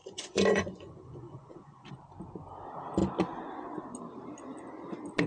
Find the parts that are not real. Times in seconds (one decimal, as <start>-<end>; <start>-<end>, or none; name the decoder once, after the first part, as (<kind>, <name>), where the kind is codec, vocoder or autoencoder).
0.0-1.9 (vocoder, Vocos)